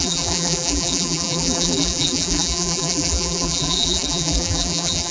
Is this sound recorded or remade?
remade